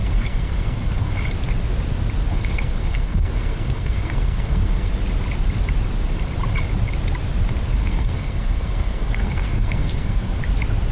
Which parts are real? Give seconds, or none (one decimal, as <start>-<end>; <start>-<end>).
1.1-2.3; 4.9-7.8; 10.4-10.9